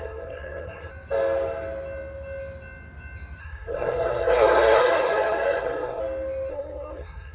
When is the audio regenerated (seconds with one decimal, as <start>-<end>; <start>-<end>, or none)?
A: 0.0-0.9; 3.4-6.0; 6.5-7.3